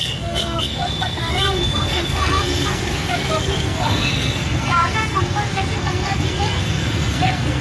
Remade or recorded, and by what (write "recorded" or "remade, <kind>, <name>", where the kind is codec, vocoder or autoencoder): remade, codec, SNAC